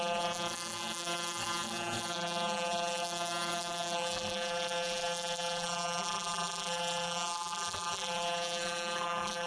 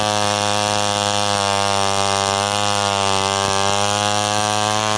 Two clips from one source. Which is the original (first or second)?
second